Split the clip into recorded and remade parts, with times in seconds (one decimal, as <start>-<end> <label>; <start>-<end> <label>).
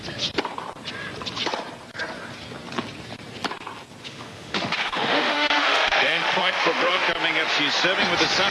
0.0-4.0 recorded; 4.0-7.0 remade; 7.0-8.5 recorded